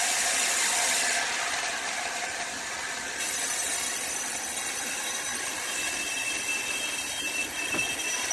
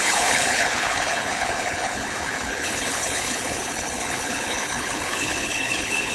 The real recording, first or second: first